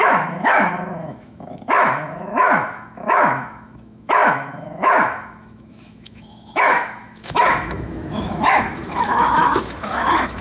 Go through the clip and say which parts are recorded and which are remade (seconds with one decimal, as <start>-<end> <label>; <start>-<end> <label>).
0.0-10.4 remade